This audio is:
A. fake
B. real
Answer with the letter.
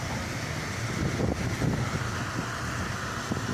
B